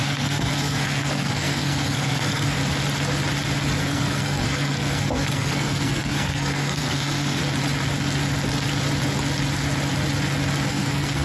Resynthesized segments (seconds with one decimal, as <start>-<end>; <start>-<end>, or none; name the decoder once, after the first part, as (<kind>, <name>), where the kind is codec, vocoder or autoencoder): 0.0-2.6 (codec, SNAC); 3.8-7.4; 10.7-11.2